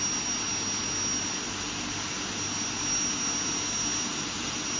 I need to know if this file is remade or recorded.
recorded